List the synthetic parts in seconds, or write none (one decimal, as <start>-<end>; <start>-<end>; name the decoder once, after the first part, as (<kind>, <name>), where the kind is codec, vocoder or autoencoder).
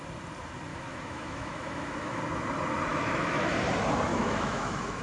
0.7-2.2 (autoencoder, DAC-VAE); 2.9-3.6; 4.1-5.0